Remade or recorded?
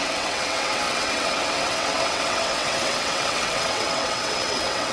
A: remade